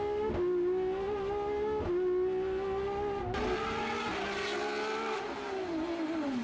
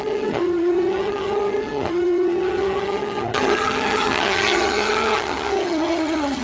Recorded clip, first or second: first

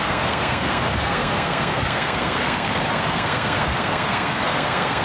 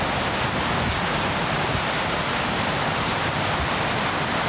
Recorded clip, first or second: second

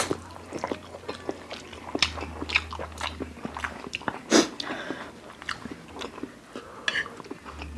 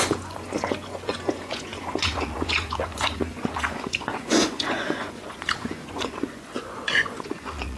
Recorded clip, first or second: first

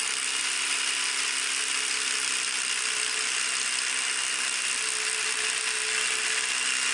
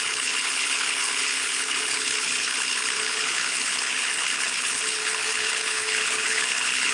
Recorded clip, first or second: first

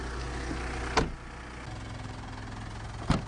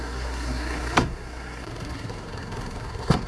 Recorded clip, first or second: first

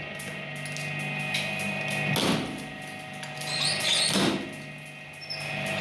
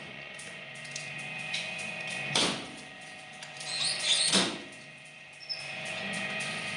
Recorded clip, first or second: first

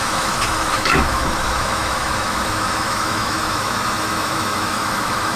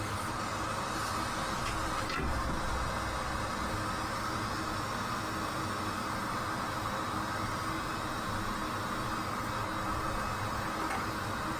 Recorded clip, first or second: second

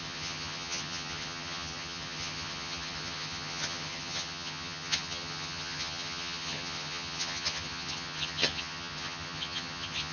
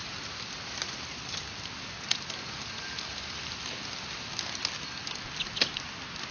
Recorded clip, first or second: second